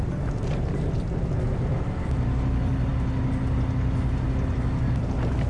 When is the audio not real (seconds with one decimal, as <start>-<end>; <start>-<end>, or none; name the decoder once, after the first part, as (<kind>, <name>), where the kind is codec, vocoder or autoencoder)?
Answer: none